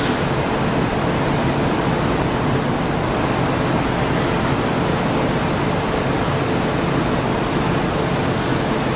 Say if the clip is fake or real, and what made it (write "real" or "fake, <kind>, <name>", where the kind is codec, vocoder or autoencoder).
real